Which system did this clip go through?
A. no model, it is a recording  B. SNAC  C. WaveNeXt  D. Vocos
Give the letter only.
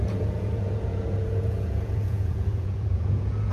D